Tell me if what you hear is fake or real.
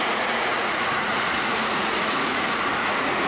fake